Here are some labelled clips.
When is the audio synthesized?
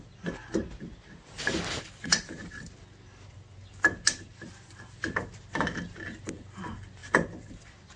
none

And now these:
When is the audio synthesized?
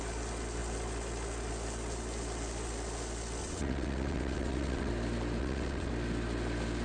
3.4-4.9 (vocoder, WaveNeXt); 5.4-5.9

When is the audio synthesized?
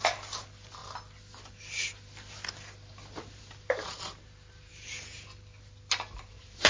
none